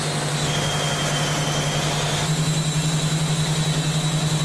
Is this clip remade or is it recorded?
recorded